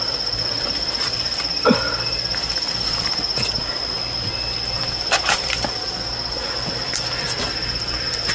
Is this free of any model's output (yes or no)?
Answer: yes